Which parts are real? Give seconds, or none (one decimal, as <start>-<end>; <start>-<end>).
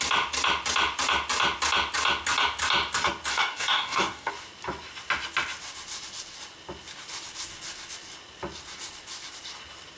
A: 0.0-3.3; 4.3-10.0